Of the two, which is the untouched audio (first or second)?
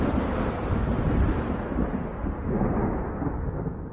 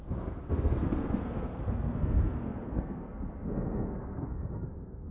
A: first